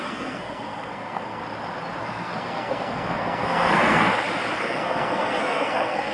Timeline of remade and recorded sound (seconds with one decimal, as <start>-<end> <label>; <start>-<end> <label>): 0.0-1.4 remade; 1.4-2.0 recorded; 2.0-4.1 remade; 4.1-4.6 recorded; 4.6-6.1 remade